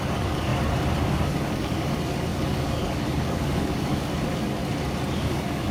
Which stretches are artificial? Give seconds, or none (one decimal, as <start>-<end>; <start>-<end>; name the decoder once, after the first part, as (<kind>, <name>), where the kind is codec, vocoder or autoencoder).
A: 0.0-0.5 (codec, DAC); 1.0-4.6; 5.2-5.7